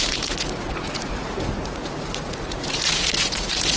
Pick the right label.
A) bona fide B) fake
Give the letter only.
B